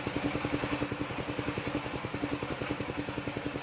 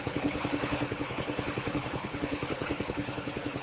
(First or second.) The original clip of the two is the first